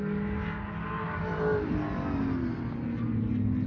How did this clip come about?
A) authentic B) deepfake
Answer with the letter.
A